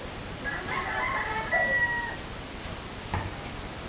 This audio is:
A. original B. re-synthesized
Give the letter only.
A